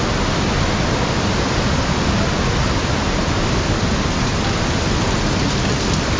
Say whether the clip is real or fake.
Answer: real